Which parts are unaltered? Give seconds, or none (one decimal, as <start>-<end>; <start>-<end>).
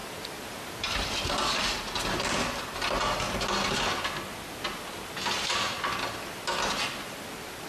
0.0-7.7